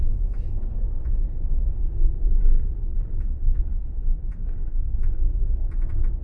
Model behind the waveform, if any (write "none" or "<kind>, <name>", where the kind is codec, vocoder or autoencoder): none